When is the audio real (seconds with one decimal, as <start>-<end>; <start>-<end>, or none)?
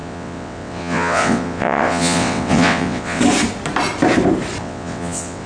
3.2-4.6